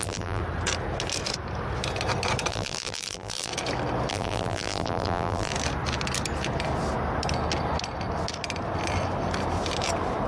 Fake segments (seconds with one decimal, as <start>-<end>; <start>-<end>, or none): 0.0-0.4; 2.5-3.5; 4.1-5.5